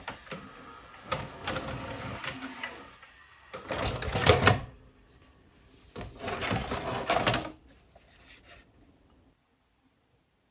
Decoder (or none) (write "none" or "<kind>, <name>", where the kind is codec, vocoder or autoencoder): none